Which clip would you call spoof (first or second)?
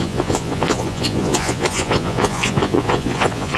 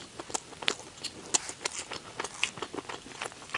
first